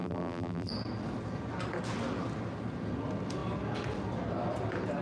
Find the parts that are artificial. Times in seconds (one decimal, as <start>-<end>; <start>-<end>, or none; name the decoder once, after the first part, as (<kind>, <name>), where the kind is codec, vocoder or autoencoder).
0.0-0.7 (vocoder, BigVGAN v2)